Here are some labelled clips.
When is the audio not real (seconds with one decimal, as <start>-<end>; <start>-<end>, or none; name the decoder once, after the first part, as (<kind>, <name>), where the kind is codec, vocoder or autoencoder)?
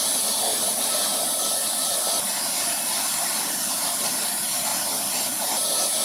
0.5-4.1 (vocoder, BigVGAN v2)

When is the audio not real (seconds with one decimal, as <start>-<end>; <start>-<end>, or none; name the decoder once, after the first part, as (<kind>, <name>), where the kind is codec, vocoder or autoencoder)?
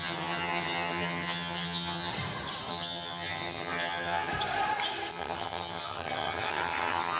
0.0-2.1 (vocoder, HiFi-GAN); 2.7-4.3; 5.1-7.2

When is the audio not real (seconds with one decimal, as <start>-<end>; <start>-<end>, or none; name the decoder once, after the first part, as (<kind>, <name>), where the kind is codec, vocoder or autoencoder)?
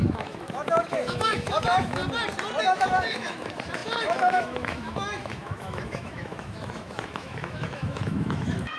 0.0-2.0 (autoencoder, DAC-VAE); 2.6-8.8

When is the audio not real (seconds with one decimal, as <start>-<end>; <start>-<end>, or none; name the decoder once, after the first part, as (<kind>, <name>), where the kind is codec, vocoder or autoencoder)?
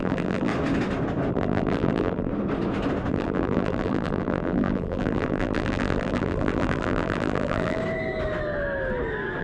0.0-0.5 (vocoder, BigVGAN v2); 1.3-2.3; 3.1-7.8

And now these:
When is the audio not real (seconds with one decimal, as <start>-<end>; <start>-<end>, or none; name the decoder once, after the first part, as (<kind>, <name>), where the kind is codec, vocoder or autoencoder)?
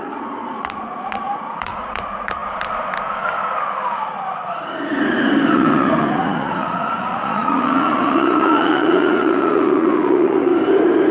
0.0-2.4 (vocoder, Vocos); 5.5-10.5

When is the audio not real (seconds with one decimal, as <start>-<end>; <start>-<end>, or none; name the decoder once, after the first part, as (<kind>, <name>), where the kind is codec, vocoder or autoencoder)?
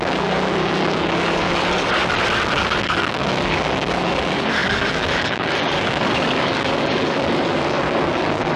0.0-2.0 (codec, DAC); 2.5-8.6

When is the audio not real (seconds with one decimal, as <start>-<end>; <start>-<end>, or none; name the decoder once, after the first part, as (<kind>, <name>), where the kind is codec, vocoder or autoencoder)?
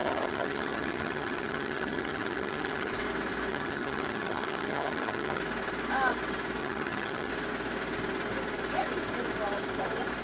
0.0-2.9 (vocoder, HiFi-GAN); 3.5-5.4; 6.6-7.3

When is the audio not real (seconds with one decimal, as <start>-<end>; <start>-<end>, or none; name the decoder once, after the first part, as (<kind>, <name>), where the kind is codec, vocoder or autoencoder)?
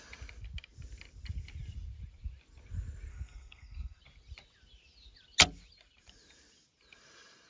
3.1-4.0 (codec, SNAC)